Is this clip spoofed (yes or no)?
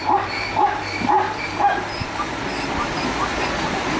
no